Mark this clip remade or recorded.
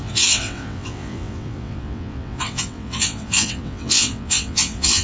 remade